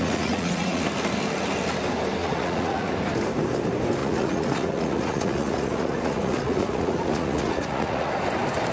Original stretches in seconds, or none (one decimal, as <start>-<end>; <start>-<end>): 0.8-2.2; 2.9-4.0; 8.1-8.7